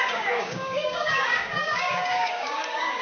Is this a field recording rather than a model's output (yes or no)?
no